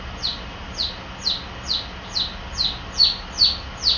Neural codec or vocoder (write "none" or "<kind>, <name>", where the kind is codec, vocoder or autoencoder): none